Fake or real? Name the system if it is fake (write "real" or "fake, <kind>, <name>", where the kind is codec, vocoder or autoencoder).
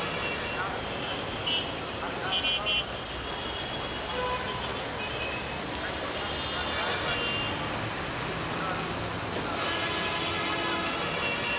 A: real